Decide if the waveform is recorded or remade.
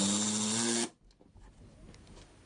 recorded